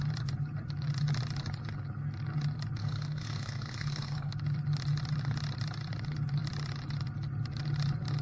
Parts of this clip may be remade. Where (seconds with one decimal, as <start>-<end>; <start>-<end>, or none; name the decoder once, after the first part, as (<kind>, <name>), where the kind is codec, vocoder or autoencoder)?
2.8-4.3 (codec, SNAC)